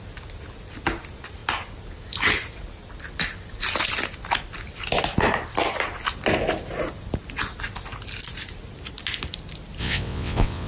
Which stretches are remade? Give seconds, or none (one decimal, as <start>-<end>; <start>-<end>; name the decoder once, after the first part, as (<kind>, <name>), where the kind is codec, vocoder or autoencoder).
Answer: 9.8-10.7 (vocoder, WaveNeXt)